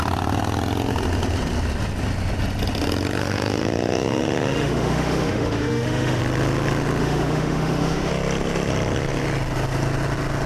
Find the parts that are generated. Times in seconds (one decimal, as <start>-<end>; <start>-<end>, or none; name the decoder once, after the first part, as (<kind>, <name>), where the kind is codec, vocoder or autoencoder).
3.2-6.2 (autoencoder, DAC-VAE); 7.0-8.1